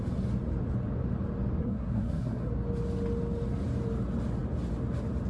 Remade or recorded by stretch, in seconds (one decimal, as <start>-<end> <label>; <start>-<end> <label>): 0.0-1.6 recorded; 1.6-2.5 remade; 2.5-5.3 recorded